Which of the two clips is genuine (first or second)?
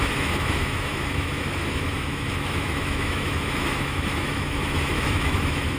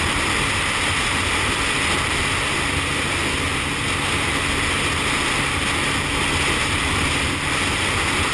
second